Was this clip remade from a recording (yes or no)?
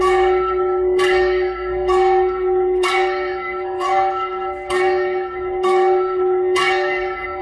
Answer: yes